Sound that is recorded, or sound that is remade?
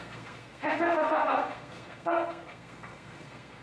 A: remade